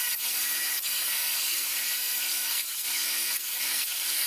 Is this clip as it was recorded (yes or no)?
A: no